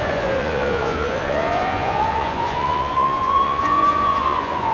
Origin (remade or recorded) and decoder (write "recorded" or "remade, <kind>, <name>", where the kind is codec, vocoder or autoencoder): remade, vocoder, Vocos